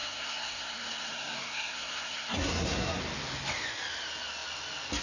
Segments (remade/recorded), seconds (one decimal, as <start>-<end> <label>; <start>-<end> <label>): 0.0-3.0 remade; 3.0-5.0 recorded